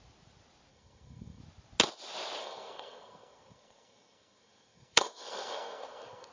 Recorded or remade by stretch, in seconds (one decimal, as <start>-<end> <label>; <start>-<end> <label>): 0.0-0.7 recorded; 0.7-1.4 remade; 1.4-2.4 recorded; 2.4-6.3 remade